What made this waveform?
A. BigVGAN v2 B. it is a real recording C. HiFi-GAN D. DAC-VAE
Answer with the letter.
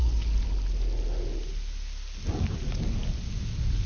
B